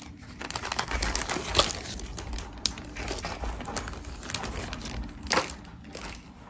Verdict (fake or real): real